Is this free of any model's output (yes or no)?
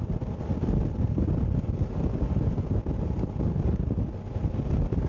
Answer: yes